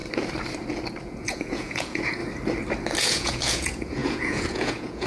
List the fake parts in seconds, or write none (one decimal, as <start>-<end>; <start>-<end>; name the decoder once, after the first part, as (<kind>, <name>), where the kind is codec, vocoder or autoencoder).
1.0-2.2 (vocoder, Vocos); 3.0-5.1